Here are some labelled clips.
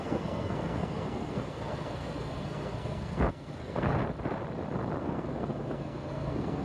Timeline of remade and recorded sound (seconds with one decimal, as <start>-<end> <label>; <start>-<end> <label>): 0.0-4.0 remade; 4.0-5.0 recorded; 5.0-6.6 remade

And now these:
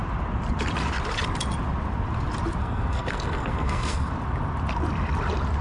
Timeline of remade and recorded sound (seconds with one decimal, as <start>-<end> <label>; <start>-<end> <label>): 0.0-2.6 recorded; 2.6-4.1 remade; 4.1-5.6 recorded

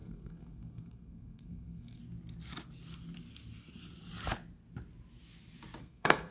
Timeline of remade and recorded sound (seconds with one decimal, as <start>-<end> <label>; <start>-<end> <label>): 0.0-2.0 remade; 2.0-5.8 recorded; 5.8-6.3 remade

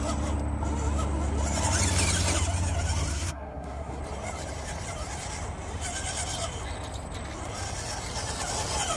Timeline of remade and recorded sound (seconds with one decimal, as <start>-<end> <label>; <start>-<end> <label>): 0.0-3.1 recorded; 3.1-4.0 remade; 4.0-9.0 recorded

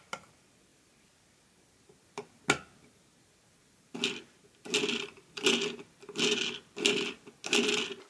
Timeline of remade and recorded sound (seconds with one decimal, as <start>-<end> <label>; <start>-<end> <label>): 0.0-8.1 recorded

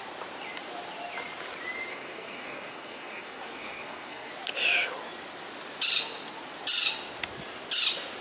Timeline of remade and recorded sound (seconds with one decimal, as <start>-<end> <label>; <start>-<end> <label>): 0.0-1.9 recorded; 1.9-4.3 remade; 4.3-8.2 recorded

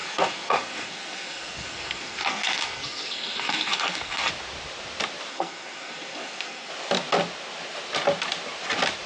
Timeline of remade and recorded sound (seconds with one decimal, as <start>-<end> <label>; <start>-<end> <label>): 0.0-4.3 remade; 4.3-5.3 recorded; 5.3-6.7 remade; 6.7-9.1 recorded

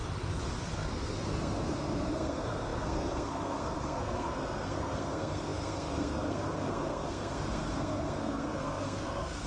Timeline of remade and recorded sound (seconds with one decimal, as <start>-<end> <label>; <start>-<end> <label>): 0.0-0.7 recorded; 0.7-9.5 remade